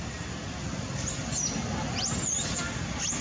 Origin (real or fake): real